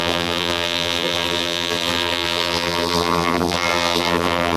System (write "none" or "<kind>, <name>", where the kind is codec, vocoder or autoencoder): vocoder, BigVGAN v2